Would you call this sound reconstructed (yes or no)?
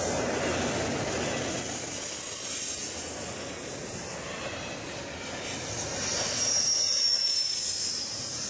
no